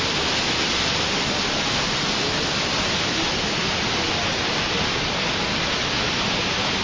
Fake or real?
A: real